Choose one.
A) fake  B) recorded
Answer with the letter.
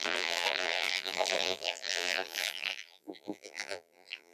A